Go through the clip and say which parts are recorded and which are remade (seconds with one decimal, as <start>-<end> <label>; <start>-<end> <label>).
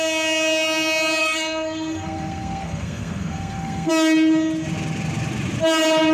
0.0-1.2 recorded; 1.2-3.9 remade; 3.9-6.1 recorded